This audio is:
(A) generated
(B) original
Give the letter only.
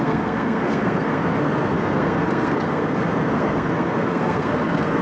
A